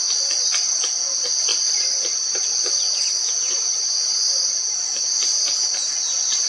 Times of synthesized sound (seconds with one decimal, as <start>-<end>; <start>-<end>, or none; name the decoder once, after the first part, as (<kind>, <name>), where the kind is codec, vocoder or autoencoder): none